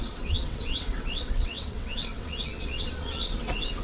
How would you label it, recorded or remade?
remade